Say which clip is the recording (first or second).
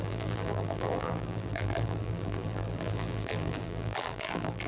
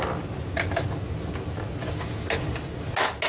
second